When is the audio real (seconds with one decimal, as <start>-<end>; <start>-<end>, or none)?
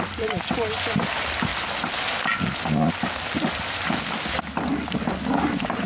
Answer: 0.0-5.9